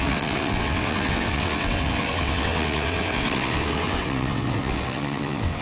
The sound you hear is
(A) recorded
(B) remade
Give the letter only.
B